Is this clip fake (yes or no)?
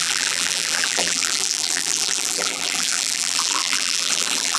yes